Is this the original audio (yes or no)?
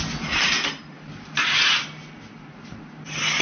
yes